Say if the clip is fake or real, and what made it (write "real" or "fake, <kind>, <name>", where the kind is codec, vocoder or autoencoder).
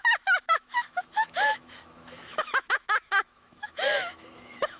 fake, autoencoder, DAC-VAE